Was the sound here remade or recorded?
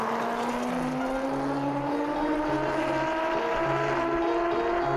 recorded